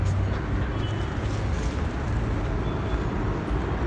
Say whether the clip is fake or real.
real